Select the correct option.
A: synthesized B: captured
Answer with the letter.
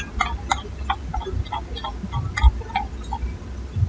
B